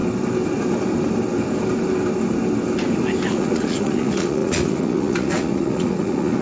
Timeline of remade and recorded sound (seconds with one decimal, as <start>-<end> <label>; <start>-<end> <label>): 0.0-3.3 recorded; 3.3-6.4 remade